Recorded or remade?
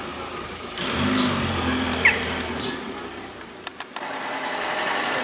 remade